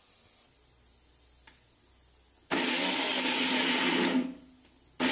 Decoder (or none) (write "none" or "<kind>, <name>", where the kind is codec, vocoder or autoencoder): none